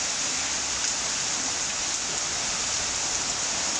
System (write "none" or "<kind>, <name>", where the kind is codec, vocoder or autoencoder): none